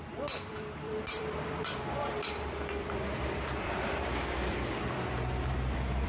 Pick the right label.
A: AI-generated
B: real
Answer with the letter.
A